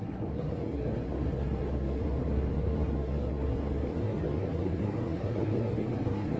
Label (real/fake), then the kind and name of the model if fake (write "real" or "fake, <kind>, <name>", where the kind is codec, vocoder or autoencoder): fake, codec, SNAC